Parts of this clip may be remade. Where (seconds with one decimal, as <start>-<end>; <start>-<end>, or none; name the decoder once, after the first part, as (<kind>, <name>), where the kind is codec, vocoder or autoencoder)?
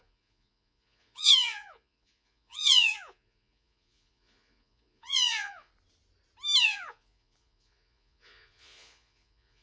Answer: 0.0-5.7 (vocoder, Vocos); 6.6-9.6